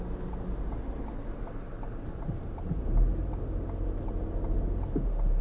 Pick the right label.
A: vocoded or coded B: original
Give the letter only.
B